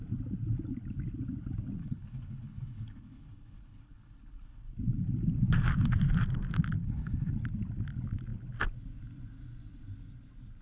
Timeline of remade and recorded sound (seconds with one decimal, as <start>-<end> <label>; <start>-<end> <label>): 0.0-1.8 recorded; 1.8-4.7 remade; 4.7-6.8 recorded; 6.8-7.3 remade; 7.3-10.6 recorded